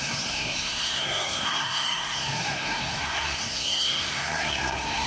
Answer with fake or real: fake